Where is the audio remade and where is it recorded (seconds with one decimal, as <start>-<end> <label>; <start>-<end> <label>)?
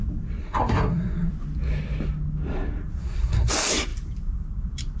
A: 0.0-0.4 recorded; 0.4-1.3 remade; 1.3-3.0 recorded; 3.0-3.5 remade; 3.5-5.0 recorded